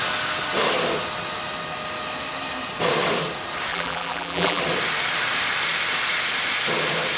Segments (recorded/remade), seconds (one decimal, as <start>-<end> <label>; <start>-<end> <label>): 0.0-3.7 recorded; 3.7-4.6 remade; 4.6-7.2 recorded